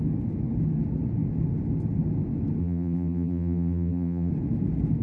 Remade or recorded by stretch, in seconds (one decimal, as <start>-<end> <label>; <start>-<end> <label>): 0.0-2.6 recorded; 2.6-4.3 remade; 4.3-5.0 recorded